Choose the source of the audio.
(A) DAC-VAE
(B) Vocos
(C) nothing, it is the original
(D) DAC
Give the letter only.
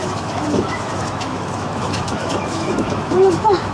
A